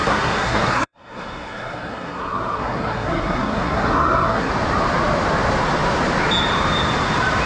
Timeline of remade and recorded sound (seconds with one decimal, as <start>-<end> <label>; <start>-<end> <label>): 0.0-4.5 remade; 4.5-7.5 recorded